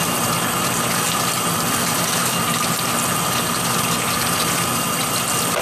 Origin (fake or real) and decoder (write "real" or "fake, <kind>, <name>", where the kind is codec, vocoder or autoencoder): real